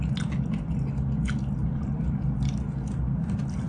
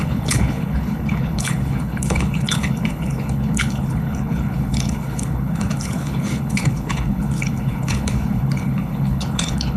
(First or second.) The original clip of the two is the first